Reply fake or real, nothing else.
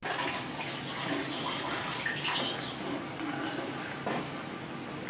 real